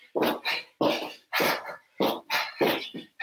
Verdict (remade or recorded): recorded